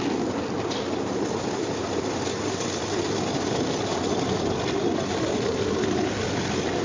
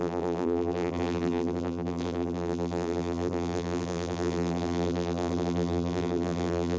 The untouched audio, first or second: first